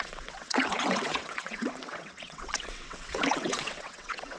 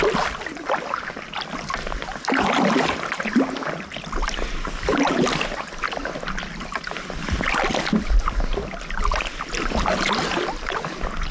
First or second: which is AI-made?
first